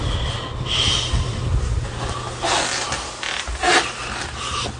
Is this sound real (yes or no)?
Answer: yes